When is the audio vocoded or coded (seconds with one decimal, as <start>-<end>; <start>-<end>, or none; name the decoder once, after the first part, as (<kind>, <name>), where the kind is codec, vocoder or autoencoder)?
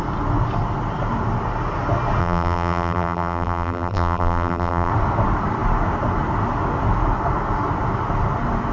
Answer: 2.2-4.9 (vocoder, BigVGAN v2)